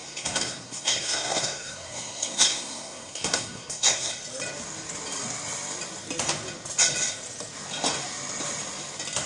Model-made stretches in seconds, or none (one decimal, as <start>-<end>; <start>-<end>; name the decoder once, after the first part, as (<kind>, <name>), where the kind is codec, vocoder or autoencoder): 0.0-4.1 (codec, SNAC)